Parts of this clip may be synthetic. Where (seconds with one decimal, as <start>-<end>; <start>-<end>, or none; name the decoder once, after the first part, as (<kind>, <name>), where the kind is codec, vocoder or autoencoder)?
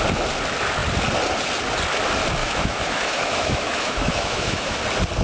2.4-4.8 (autoencoder, DAC-VAE)